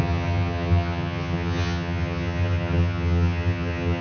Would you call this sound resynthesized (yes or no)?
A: yes